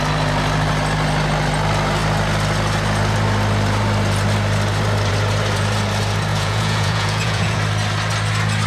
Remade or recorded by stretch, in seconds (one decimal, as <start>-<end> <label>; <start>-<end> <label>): 0.0-6.3 recorded; 6.3-7.6 remade; 7.6-8.7 recorded